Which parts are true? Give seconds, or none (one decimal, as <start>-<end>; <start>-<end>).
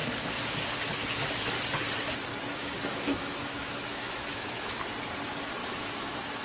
0.0-2.5; 4.8-5.6